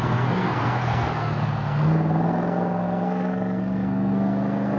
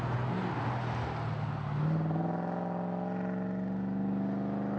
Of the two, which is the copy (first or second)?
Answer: first